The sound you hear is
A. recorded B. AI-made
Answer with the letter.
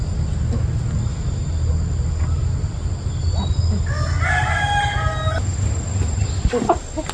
A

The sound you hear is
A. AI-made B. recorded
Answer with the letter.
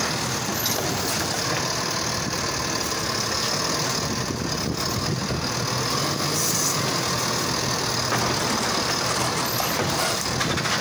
B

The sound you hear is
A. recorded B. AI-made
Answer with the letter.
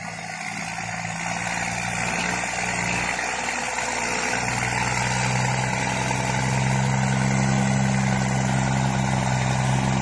A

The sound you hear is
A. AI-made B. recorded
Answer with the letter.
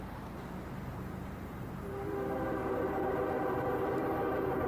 A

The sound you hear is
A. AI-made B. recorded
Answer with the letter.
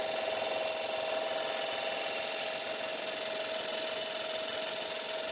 B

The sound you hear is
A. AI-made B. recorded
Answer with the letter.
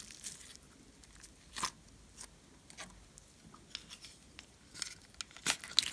B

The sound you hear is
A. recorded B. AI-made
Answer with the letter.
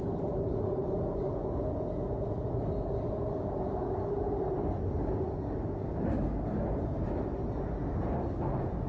A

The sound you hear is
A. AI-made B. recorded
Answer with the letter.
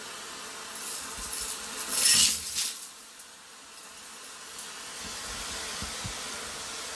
B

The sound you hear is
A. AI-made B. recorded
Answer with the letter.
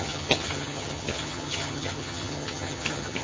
A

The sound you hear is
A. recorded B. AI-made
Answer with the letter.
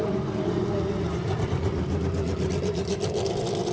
B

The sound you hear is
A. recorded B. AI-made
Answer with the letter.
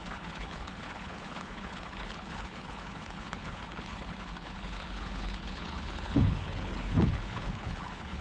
B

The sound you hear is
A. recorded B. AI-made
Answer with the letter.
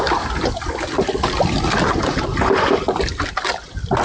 A